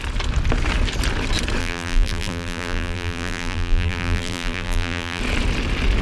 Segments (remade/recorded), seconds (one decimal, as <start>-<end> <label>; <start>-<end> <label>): 0.0-1.6 recorded; 1.6-5.2 remade; 5.2-6.0 recorded